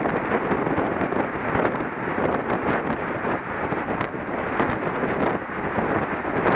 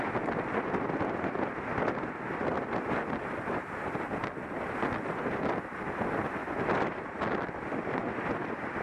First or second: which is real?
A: second